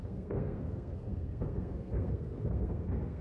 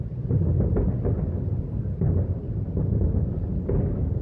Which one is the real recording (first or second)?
second